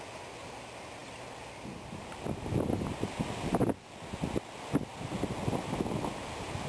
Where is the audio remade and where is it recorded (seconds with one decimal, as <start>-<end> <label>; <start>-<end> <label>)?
0.0-6.7 recorded